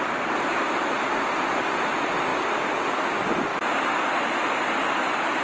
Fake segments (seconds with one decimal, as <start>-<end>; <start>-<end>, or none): none

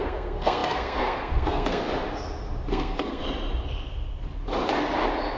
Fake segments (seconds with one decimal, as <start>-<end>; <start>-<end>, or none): 0.0-1.8; 2.7-3.2

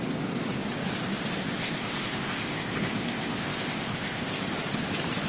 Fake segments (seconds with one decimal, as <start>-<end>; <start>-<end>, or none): 1.6-4.4

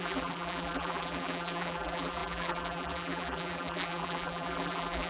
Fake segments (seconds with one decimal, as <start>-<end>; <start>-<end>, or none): 0.0-5.1